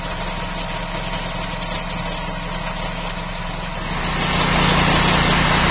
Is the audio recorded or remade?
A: recorded